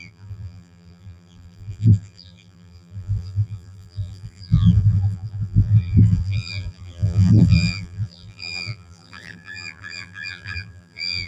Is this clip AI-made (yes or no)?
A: yes